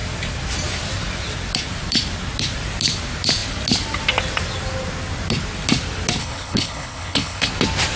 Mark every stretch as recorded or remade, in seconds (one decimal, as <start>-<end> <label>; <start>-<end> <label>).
0.0-6.2 recorded; 6.2-7.5 remade; 7.5-8.0 recorded